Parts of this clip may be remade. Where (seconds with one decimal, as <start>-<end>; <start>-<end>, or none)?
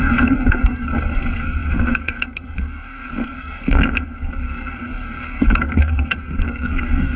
0.0-7.2